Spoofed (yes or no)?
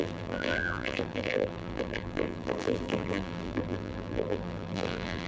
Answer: yes